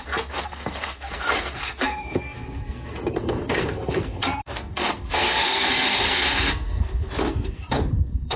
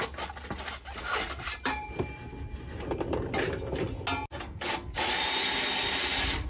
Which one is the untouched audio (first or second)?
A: second